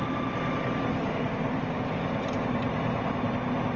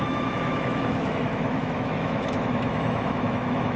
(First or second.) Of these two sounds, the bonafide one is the first